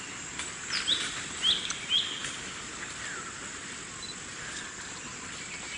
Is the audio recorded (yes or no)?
yes